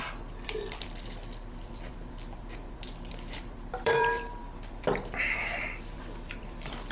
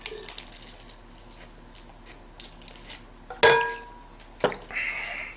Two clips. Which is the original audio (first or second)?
second